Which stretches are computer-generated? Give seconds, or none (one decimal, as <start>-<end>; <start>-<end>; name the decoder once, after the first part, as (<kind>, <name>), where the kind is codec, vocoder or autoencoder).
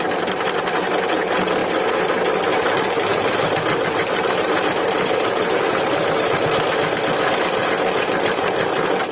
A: 2.5-5.8 (vocoder, BigVGAN v2); 7.6-8.2